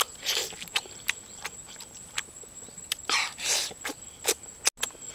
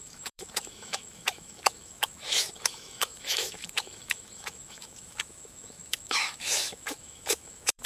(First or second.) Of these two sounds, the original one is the first